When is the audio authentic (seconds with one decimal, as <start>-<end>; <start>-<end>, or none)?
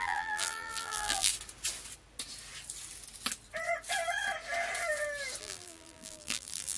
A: 1.3-5.4